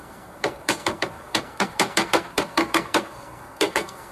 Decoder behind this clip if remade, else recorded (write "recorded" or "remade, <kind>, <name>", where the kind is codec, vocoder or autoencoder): remade, codec, SNAC